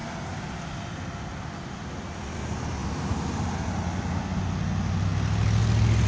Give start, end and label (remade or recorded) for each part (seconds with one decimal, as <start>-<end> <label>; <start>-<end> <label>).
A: 0.0-6.1 recorded